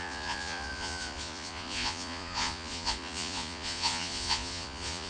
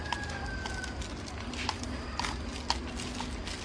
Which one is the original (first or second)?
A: second